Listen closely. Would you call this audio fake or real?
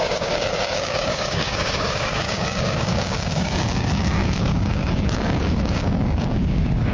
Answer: fake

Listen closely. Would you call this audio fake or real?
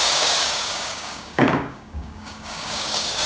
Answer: fake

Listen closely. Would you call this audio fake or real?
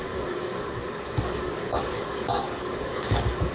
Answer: fake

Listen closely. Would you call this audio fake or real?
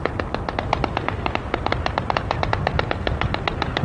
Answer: real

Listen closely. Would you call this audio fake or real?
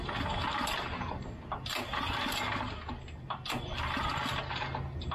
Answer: real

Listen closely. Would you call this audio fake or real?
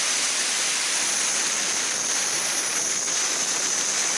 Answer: real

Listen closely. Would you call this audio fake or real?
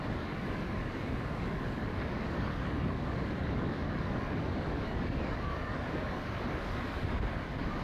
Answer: fake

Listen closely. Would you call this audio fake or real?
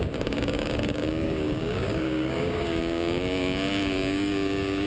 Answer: fake